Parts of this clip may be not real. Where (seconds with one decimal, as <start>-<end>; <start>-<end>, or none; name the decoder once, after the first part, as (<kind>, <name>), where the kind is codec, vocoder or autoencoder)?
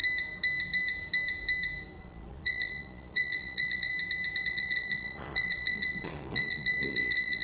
2.0-3.9 (vocoder, Vocos); 4.4-7.4